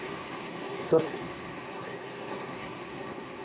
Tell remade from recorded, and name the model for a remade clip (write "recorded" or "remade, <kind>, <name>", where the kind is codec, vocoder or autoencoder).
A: remade, codec, SNAC